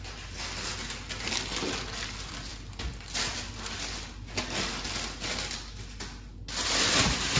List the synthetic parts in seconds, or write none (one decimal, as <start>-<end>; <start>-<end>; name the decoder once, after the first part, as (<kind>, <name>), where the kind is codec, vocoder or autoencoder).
none